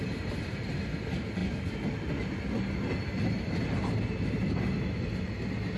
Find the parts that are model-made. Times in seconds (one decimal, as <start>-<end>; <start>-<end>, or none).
none